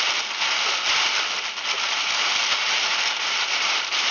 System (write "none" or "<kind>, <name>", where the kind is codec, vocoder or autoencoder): none